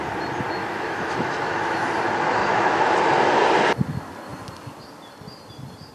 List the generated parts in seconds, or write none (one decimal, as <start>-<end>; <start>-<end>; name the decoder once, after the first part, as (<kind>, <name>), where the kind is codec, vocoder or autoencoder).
0.6-1.9 (autoencoder, DAC-VAE); 2.4-2.9